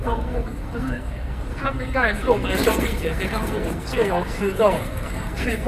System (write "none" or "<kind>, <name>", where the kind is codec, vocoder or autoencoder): codec, SNAC